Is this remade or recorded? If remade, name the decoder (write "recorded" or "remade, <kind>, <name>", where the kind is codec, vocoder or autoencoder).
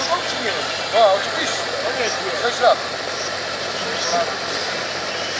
recorded